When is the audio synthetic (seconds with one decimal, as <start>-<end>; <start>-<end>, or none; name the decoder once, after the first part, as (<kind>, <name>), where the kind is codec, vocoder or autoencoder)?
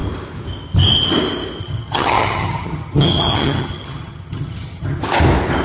1.6-5.0 (vocoder, HiFi-GAN)